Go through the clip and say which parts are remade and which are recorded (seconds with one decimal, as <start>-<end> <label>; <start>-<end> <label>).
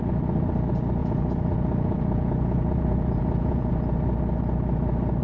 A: 0.0-1.0 recorded; 1.0-3.7 remade; 3.7-5.2 recorded